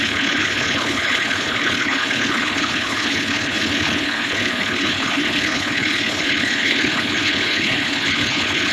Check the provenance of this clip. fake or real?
fake